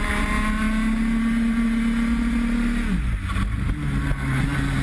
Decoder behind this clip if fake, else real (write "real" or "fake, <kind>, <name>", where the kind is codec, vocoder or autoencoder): real